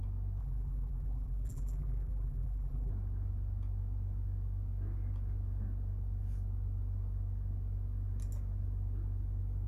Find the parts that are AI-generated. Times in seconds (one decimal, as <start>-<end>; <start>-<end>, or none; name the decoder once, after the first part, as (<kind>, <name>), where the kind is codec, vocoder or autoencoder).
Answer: 0.4-2.9 (vocoder, BigVGAN v2)